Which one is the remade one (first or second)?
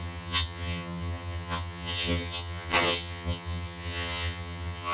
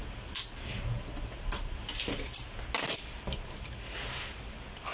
first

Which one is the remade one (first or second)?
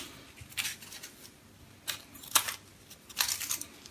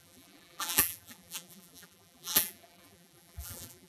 second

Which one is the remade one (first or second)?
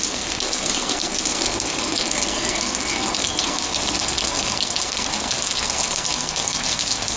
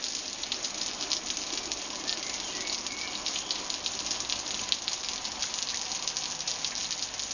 first